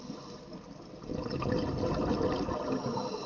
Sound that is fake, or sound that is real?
real